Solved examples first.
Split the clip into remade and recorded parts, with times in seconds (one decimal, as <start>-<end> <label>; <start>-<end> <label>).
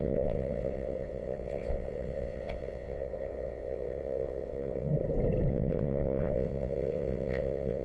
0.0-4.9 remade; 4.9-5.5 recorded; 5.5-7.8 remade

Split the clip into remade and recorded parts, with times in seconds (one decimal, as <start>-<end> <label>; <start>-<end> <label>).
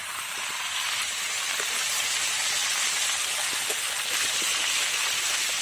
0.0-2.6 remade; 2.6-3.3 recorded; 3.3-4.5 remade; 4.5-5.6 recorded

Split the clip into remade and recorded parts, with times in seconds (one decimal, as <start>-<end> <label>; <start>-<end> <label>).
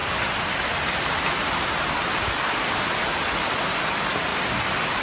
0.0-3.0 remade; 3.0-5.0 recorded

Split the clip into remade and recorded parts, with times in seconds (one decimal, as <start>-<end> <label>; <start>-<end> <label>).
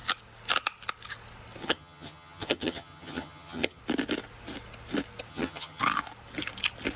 0.0-1.6 recorded; 1.6-3.8 remade; 3.8-5.3 recorded; 5.3-5.8 remade; 5.8-7.0 recorded